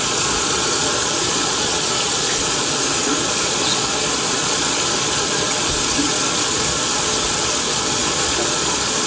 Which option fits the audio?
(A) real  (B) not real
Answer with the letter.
B